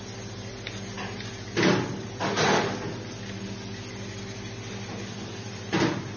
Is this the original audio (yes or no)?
yes